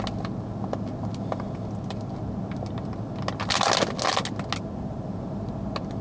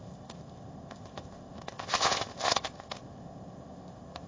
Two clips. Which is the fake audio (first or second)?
second